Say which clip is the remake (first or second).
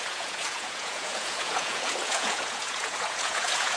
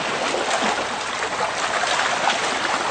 first